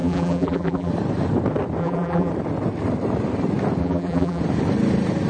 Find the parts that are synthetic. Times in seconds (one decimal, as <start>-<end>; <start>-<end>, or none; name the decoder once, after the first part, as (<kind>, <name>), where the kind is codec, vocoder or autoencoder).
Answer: 0.0-0.9 (vocoder, BigVGAN v2); 1.8-2.3; 3.8-4.4